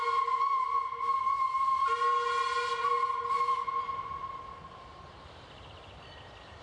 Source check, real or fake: real